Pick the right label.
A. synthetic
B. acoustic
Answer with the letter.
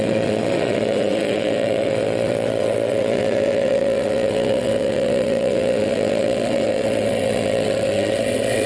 A